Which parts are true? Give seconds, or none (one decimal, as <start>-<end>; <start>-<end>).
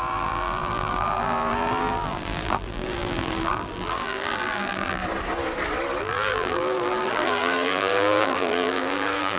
5.0-6.0